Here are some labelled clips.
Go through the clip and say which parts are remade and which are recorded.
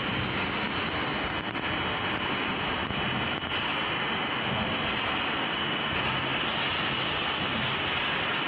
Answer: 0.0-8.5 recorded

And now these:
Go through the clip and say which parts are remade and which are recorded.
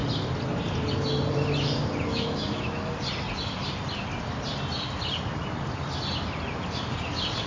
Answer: 0.0-2.1 recorded; 2.1-2.9 remade; 2.9-7.5 recorded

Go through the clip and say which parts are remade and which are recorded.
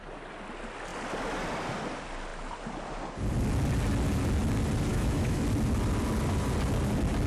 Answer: 0.0-4.9 recorded; 4.9-5.4 remade; 5.4-7.3 recorded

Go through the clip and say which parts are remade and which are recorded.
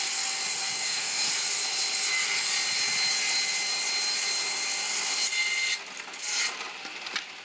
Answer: 0.0-0.8 recorded; 0.8-1.3 remade; 1.3-7.4 recorded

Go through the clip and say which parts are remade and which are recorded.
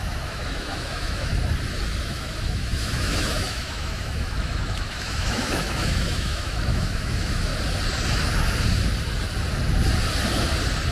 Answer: 0.0-1.3 remade; 1.3-2.0 recorded; 2.0-7.5 remade; 7.5-10.9 recorded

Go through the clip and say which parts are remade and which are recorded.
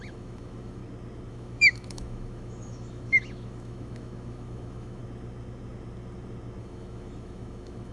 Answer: 0.0-0.8 remade; 0.8-1.3 recorded; 1.3-5.0 remade; 5.0-6.6 recorded; 6.6-7.9 remade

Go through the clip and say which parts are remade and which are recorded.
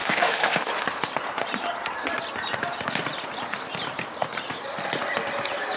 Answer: 0.0-0.7 remade; 0.7-5.8 recorded